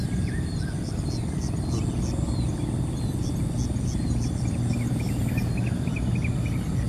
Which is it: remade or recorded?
recorded